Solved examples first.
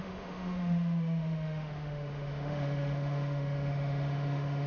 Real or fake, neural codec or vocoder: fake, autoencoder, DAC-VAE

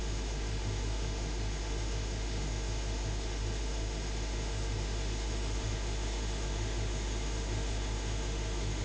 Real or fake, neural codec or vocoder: fake, autoencoder, DAC-VAE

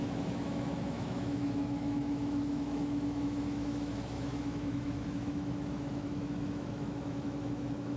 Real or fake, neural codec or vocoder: fake, autoencoder, DAC-VAE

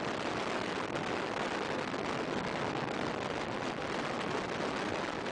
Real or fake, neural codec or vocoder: real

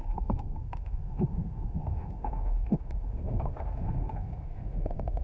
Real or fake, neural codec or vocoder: fake, autoencoder, DAC-VAE